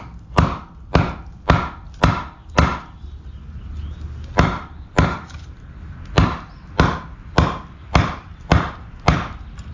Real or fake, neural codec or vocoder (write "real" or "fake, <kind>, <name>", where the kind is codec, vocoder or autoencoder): real